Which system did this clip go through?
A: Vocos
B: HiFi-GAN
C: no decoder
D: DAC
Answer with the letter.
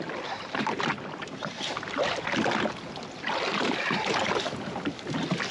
C